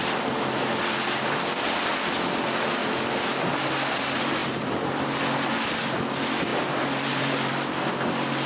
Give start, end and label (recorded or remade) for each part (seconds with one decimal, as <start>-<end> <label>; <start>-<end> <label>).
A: 0.0-2.8 recorded; 2.8-3.5 remade; 3.5-4.4 recorded; 4.4-5.2 remade; 5.2-6.5 recorded; 6.5-7.9 remade; 7.9-8.5 recorded